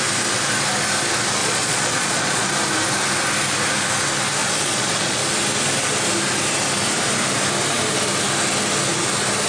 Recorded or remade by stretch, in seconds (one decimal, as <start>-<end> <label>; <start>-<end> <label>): 0.0-1.4 recorded; 1.4-2.5 remade; 2.5-4.4 recorded; 4.4-5.2 remade; 5.2-9.5 recorded